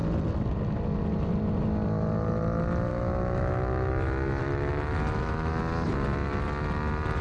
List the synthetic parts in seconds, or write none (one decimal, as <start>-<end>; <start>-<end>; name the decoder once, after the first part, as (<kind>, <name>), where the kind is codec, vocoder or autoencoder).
2.9-3.9 (autoencoder, DAC-VAE); 4.4-5.5